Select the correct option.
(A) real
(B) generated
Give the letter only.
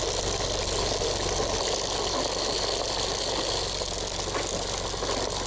A